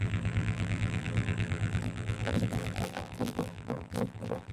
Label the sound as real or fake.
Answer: fake